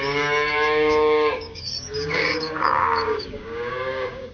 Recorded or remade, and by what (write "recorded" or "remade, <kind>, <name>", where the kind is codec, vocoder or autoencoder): remade, codec, DAC